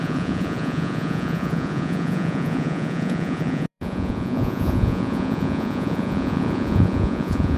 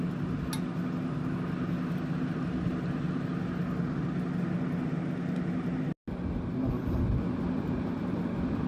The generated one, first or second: first